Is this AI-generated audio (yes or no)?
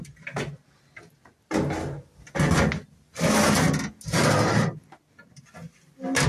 no